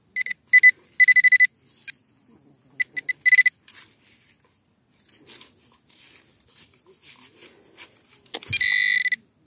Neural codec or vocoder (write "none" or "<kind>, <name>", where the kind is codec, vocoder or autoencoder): none